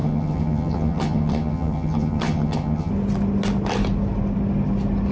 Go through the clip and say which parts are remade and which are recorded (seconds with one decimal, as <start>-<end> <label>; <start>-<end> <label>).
0.0-2.9 remade; 2.9-5.1 recorded